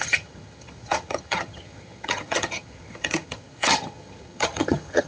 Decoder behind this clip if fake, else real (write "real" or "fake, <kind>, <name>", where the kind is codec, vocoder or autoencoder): fake, vocoder, HiFi-GAN